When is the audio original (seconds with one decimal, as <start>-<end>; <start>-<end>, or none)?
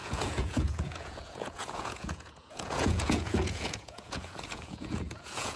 none